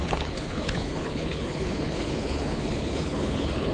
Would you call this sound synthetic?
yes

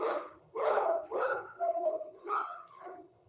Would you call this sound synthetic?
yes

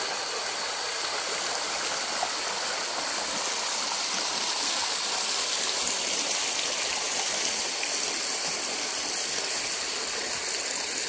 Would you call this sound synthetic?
no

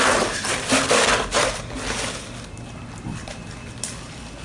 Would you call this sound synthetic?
no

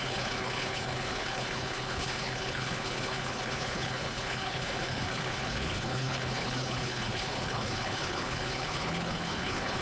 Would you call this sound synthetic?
yes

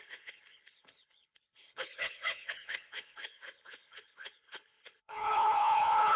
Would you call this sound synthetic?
yes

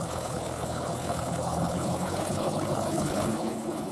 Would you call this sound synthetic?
yes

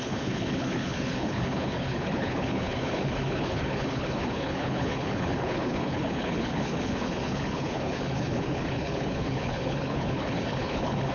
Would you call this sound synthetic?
yes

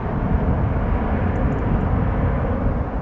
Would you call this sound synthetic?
no